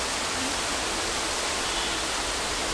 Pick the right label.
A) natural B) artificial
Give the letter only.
A